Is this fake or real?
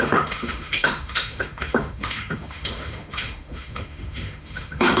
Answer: fake